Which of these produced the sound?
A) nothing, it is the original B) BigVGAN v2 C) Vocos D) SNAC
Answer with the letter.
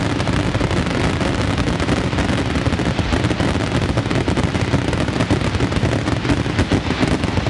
A